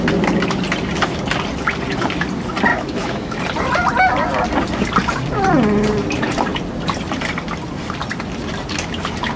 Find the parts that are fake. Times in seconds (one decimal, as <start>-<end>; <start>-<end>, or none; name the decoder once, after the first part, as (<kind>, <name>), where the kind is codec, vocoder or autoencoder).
2.7-3.4 (autoencoder, DAC-VAE)

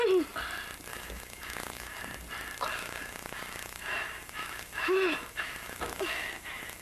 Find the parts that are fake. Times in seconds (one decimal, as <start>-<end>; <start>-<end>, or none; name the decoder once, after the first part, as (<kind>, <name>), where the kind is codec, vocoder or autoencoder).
0.9-2.0 (autoencoder, DAC-VAE); 2.7-6.8

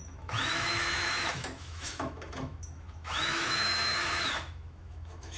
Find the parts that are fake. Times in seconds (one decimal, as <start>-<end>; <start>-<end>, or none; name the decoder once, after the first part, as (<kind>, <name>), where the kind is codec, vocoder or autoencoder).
0.0-5.4 (autoencoder, DAC-VAE)

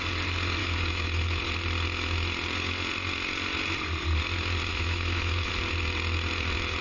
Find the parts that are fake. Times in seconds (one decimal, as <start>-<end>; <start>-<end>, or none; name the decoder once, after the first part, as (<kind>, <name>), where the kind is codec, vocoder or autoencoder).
0.6-1.4 (autoencoder, DAC-VAE); 4.7-5.5

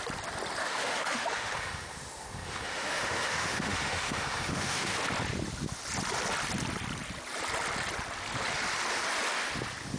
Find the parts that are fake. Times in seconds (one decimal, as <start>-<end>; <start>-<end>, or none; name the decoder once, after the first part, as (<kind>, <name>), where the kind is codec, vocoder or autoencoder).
0.6-5.0 (autoencoder, DAC-VAE)

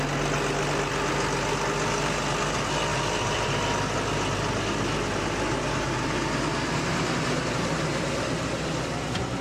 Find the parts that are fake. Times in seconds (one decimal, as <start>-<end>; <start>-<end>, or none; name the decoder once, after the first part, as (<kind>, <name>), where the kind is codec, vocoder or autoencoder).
none

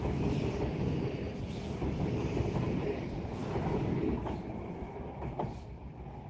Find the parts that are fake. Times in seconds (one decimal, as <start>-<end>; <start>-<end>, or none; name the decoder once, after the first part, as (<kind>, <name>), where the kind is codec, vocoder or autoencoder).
0.0-0.5 (autoencoder, DAC-VAE)

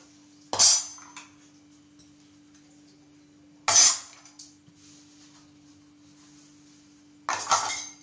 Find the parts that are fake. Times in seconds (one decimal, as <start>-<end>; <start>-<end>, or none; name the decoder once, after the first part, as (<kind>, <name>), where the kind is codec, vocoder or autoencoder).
none